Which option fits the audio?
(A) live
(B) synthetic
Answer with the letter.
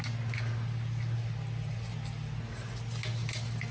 A